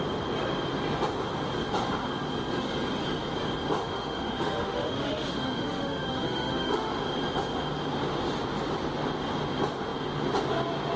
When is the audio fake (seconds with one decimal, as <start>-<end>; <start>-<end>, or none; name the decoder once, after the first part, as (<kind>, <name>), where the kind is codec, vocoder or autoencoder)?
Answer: 3.8-6.9 (autoencoder, DAC-VAE)